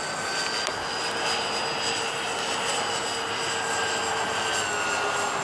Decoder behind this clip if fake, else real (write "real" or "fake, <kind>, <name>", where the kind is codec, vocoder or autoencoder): real